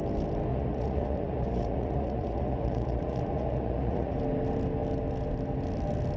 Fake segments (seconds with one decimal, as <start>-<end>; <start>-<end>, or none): 0.5-4.2